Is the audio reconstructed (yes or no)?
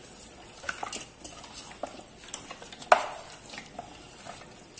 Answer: no